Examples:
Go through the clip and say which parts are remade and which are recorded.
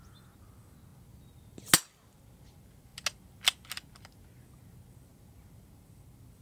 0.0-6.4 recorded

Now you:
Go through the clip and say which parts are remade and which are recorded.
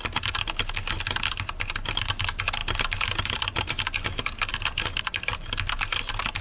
0.0-6.4 recorded